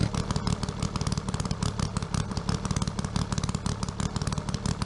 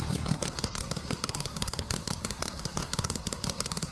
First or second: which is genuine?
first